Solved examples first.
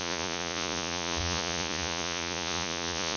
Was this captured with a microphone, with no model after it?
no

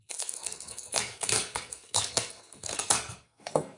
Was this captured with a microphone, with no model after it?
no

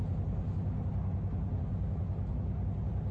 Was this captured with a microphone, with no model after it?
yes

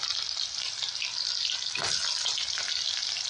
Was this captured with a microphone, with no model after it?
yes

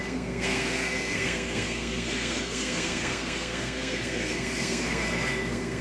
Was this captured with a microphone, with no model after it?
no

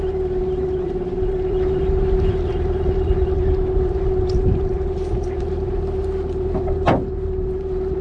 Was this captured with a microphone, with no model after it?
yes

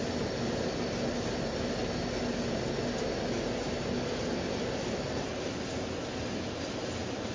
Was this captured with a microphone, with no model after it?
yes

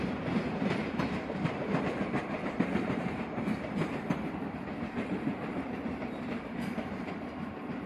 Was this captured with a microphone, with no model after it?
no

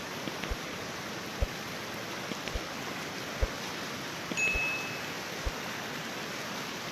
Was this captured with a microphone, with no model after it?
yes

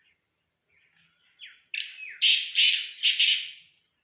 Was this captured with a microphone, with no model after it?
yes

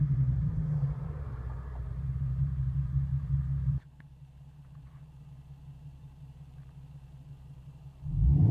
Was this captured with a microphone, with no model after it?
no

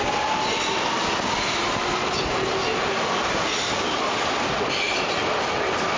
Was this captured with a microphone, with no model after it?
yes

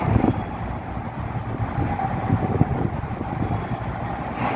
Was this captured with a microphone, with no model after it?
yes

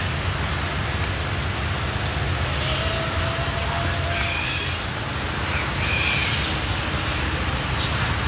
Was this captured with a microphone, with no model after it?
yes